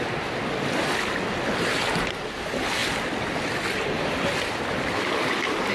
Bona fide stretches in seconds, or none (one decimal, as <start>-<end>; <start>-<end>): 0.0-5.7